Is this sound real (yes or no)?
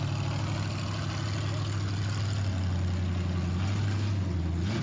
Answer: yes